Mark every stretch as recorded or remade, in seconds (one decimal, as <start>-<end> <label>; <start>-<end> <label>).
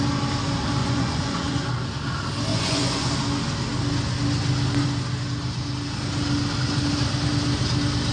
0.0-0.8 recorded; 0.8-1.6 remade; 1.6-2.5 recorded; 2.5-3.1 remade; 3.1-8.1 recorded